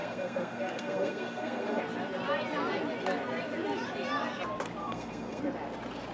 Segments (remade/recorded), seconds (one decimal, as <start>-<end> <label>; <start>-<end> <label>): 0.0-1.8 remade; 1.8-4.8 recorded; 4.8-5.4 remade; 5.4-6.1 recorded